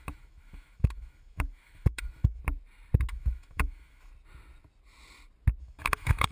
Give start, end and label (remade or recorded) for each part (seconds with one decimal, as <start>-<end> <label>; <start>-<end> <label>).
0.0-2.4 remade; 2.4-3.1 recorded; 3.1-4.1 remade; 4.1-5.6 recorded; 5.6-6.3 remade